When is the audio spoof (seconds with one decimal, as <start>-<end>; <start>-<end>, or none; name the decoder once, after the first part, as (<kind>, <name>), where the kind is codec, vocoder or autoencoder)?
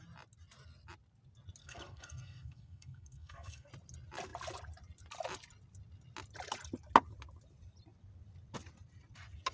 1.6-3.7 (codec, SNAC)